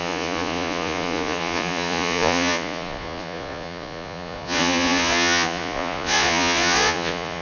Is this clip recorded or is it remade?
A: remade